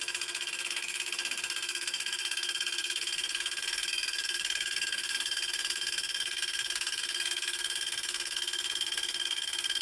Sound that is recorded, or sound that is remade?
remade